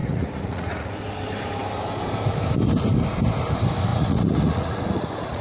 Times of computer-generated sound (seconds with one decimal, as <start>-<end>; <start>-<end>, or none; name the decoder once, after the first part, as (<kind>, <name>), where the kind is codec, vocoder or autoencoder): 0.0-1.0 (vocoder, Vocos); 3.9-5.4